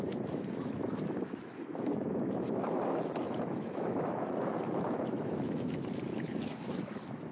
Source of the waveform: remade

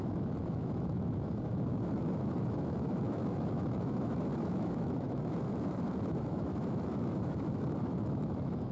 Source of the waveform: remade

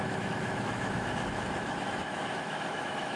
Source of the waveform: remade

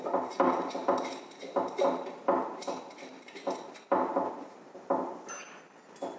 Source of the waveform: recorded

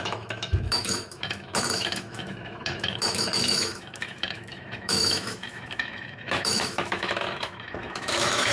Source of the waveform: remade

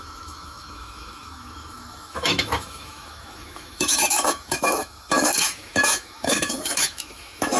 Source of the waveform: remade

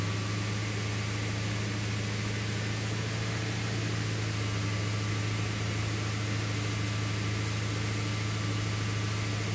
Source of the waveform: recorded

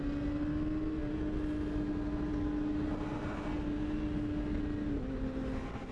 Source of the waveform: recorded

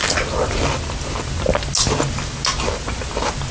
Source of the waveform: recorded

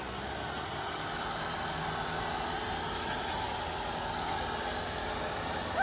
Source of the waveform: recorded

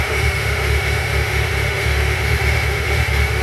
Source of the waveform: remade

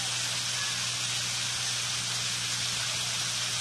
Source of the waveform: recorded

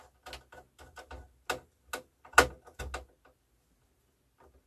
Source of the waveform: recorded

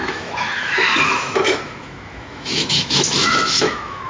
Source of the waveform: remade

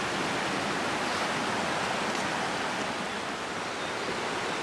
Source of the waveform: recorded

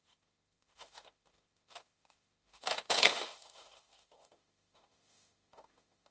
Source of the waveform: remade